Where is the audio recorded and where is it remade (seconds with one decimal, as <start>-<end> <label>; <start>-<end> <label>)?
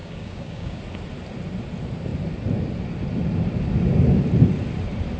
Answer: 0.0-0.8 remade; 0.8-5.2 recorded